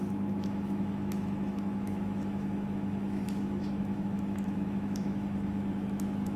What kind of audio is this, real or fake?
fake